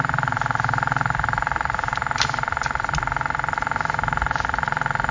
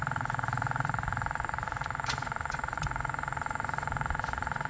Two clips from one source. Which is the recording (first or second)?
first